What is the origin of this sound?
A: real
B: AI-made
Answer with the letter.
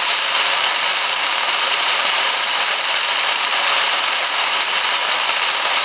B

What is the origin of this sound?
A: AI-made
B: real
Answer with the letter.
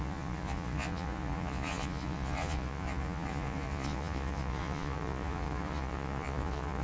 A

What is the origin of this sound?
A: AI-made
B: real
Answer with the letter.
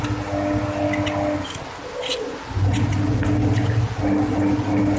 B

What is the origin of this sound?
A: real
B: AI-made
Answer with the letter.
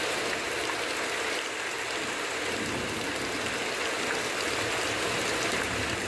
A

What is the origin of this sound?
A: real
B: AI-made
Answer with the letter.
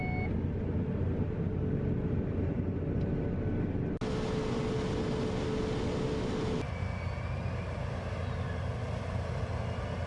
A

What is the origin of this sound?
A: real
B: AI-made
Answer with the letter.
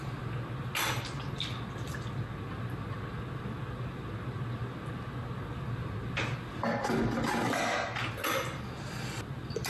A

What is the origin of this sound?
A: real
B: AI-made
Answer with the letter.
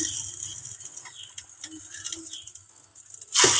A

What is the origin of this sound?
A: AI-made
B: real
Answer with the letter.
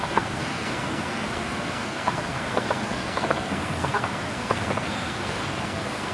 A